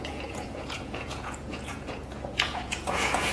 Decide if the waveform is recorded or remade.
remade